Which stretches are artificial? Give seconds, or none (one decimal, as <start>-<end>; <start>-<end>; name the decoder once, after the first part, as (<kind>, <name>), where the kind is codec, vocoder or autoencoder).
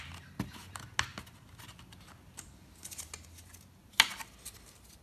none